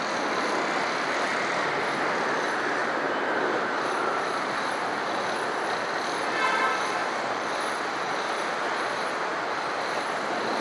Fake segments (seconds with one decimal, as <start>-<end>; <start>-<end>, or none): 2.8-5.2; 7.0-9.8